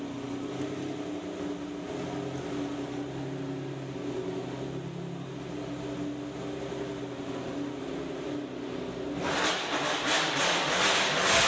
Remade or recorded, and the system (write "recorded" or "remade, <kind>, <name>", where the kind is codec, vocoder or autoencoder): recorded